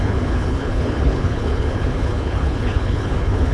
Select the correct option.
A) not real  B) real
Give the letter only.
A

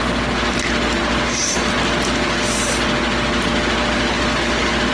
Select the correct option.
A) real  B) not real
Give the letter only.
A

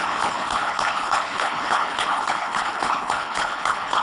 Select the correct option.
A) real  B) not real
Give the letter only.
B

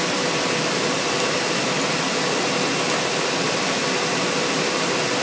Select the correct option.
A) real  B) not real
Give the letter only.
A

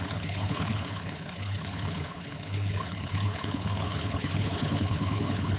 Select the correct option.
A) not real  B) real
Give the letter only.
A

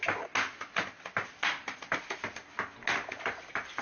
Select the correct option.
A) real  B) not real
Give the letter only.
A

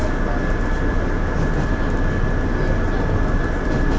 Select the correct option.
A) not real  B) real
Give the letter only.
B